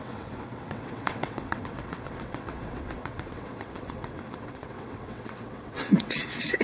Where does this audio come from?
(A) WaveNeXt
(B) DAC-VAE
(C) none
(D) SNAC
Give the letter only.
A